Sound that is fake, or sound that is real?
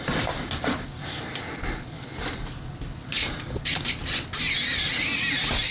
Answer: real